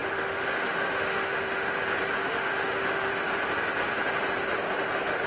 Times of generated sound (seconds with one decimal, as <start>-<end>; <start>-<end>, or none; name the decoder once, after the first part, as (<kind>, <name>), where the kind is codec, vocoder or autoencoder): 0.0-1.7 (autoencoder, DAC-VAE); 2.2-3.1